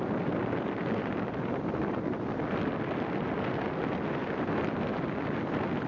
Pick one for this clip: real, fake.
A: real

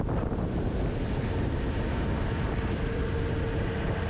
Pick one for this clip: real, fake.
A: real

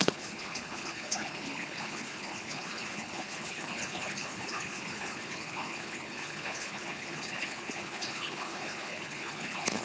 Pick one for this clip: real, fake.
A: fake